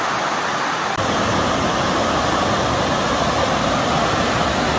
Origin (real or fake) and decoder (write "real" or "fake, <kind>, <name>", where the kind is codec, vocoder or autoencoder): real